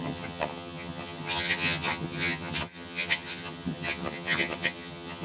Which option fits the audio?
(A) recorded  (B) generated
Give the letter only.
B